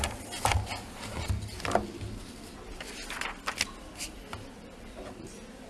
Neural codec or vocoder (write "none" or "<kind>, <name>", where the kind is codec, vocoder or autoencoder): none